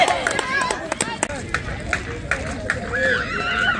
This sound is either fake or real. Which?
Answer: real